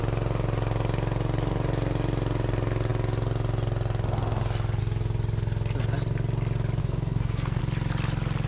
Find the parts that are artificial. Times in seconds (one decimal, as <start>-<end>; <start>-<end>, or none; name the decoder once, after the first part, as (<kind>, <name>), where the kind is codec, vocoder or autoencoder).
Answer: 6.8-7.6 (codec, SNAC)